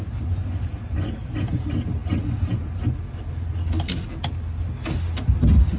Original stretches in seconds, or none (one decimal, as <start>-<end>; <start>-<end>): 0.0-5.8